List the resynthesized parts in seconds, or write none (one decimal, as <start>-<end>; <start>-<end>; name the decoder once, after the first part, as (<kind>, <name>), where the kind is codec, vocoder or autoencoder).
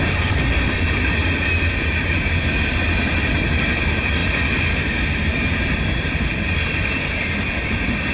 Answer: 4.2-4.7 (vocoder, BigVGAN v2)